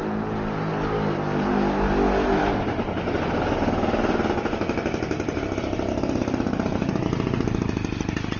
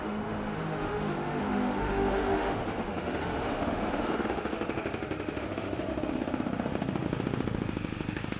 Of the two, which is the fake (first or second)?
second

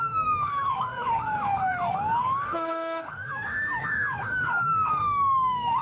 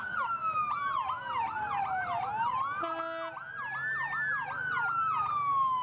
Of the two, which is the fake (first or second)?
first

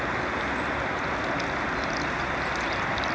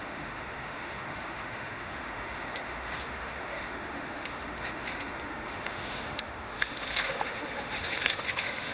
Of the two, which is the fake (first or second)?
second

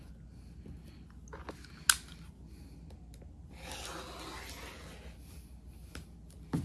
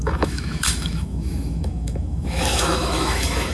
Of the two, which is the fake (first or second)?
second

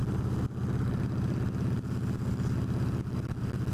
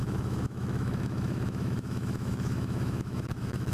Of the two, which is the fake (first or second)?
second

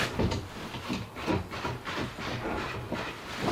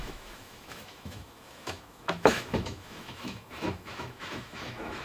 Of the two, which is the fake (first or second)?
second